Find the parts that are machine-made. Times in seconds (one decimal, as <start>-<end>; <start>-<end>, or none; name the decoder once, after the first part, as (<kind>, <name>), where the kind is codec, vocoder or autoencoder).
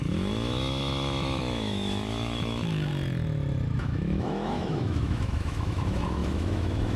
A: 0.0-2.9 (autoencoder, DAC-VAE); 3.8-7.0